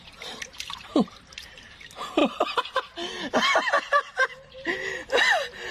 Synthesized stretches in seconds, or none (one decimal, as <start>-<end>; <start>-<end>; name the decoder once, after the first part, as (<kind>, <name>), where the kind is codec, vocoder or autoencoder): 0.9-1.6 (vocoder, BigVGAN v2)